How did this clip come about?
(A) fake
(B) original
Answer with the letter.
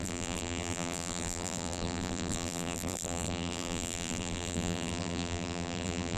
A